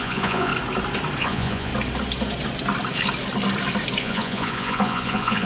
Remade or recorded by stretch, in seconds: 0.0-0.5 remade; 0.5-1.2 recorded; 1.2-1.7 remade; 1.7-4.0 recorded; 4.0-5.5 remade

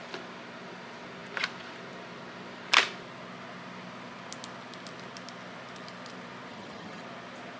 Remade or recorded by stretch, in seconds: 0.0-6.5 recorded; 6.5-7.0 remade; 7.0-7.6 recorded

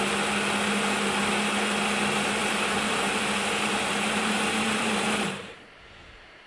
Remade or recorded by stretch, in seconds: 0.0-2.4 recorded; 2.4-6.5 remade

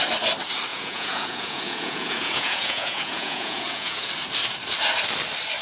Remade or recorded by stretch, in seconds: 0.0-0.7 recorded; 0.7-4.1 remade; 4.1-5.6 recorded